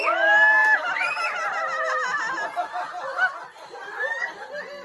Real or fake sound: real